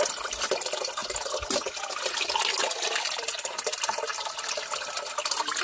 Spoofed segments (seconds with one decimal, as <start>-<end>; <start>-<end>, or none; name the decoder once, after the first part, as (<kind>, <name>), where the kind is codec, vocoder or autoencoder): none